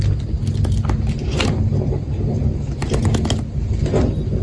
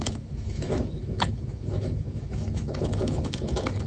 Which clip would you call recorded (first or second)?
first